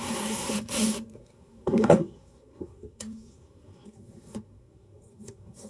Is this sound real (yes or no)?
no